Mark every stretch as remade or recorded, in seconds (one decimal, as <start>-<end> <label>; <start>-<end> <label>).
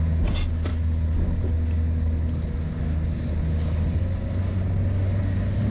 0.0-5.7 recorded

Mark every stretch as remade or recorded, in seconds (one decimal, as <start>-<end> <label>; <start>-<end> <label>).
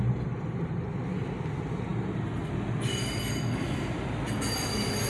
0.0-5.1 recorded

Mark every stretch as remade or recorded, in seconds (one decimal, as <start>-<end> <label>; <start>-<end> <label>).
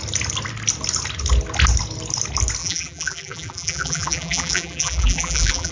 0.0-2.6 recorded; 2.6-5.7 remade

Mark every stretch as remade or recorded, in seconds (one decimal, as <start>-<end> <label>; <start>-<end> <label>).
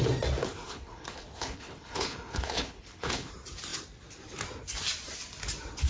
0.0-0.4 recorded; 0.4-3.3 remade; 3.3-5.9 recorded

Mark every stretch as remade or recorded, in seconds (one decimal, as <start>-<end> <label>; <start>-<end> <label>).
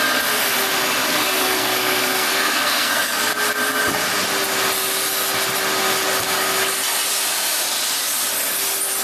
0.0-1.1 recorded; 1.1-3.3 remade; 3.3-9.0 recorded